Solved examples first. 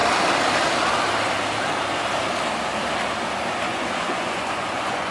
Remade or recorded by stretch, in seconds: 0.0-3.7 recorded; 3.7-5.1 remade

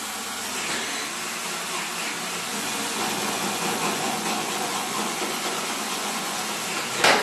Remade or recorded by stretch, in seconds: 0.0-2.5 recorded; 2.5-6.4 remade; 6.4-7.2 recorded

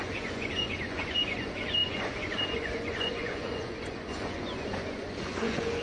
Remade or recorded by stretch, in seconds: 0.0-5.8 remade

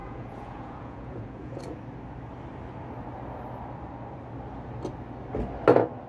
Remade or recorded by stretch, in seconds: 0.0-1.6 remade; 1.6-6.1 recorded

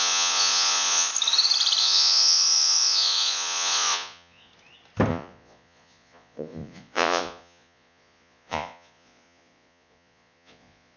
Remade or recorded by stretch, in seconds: 0.0-1.1 remade; 1.1-1.8 recorded; 1.8-4.5 remade; 4.5-5.1 recorded; 5.1-11.0 remade